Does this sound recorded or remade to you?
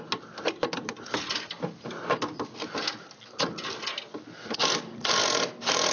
recorded